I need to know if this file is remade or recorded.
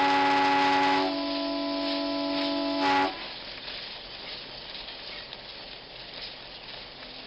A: recorded